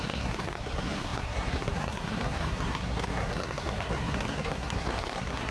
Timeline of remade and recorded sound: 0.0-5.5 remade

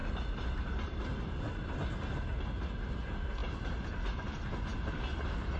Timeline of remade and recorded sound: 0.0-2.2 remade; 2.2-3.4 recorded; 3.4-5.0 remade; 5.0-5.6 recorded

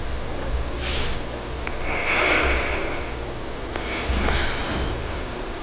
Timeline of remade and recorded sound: 0.0-4.6 recorded; 4.6-5.6 remade

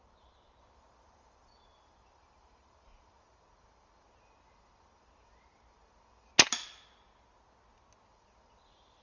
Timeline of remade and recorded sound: 0.0-6.3 remade; 6.3-8.1 recorded; 8.1-9.0 remade

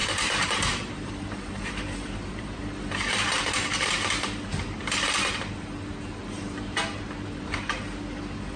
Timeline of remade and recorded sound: 0.0-2.6 remade; 2.6-8.6 recorded